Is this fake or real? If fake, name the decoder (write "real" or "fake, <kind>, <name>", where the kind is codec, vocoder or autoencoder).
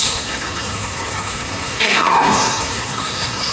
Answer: fake, codec, SNAC